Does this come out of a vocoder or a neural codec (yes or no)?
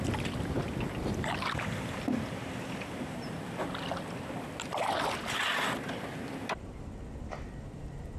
no